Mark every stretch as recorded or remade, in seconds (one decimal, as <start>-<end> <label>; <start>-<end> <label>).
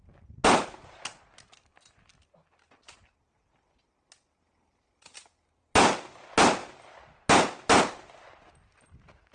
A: 0.0-9.3 recorded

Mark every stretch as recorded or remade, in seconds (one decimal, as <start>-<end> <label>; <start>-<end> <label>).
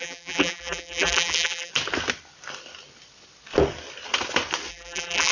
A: 0.0-1.7 remade; 1.7-4.7 recorded; 4.7-5.3 remade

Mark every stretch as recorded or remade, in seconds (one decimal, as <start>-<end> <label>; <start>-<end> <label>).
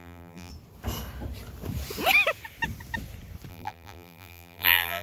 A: 0.0-0.5 remade; 0.5-3.5 recorded; 3.5-5.0 remade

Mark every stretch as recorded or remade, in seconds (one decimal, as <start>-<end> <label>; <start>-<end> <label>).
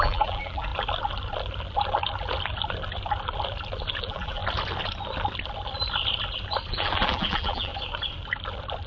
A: 0.0-0.7 remade; 0.7-4.0 recorded; 4.0-4.4 remade; 4.4-6.7 recorded; 6.7-7.7 remade; 7.7-8.9 recorded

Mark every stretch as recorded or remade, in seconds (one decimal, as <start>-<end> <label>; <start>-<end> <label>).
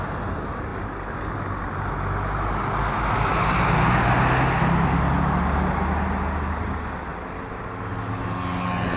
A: 0.0-0.7 recorded; 0.7-1.6 remade; 1.6-7.1 recorded; 7.1-7.9 remade; 7.9-9.0 recorded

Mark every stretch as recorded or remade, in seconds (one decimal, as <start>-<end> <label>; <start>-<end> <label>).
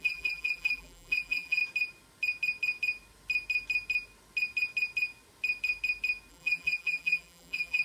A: 0.0-1.6 remade; 1.6-6.3 recorded; 6.3-7.8 remade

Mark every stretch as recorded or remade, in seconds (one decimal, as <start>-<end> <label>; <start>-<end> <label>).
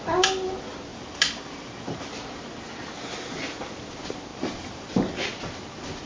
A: 0.0-0.9 recorded; 0.9-2.1 remade; 2.1-4.3 recorded; 4.3-4.9 remade; 4.9-6.1 recorded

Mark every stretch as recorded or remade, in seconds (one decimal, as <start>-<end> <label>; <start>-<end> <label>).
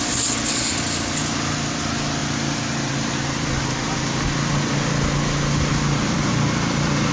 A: 0.0-7.1 recorded